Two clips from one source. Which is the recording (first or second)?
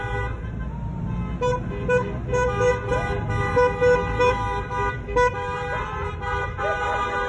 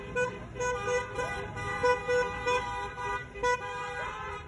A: first